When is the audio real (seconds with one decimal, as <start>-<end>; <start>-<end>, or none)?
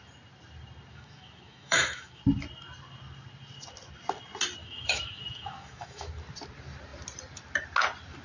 0.0-0.9; 2.2-4.6; 6.1-8.2